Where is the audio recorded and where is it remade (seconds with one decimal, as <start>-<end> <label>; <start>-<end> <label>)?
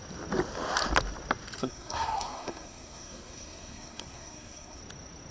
0.0-1.6 recorded; 1.6-4.8 remade; 4.8-5.3 recorded